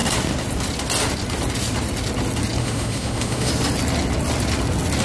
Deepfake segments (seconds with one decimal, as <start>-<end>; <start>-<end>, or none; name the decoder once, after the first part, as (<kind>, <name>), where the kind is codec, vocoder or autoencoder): 2.6-3.5 (autoencoder, DAC-VAE)

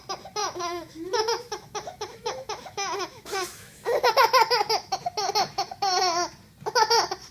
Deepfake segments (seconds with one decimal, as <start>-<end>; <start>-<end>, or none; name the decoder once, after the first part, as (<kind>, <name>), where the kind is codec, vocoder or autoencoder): 0.4-4.1 (autoencoder, DAC-VAE)

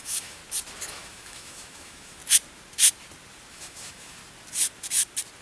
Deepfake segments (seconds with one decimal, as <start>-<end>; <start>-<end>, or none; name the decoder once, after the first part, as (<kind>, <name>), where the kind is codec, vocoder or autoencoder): 0.0-0.4 (autoencoder, DAC-VAE); 0.9-2.2; 3.5-4.2